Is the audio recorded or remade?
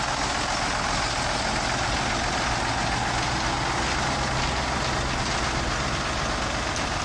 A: recorded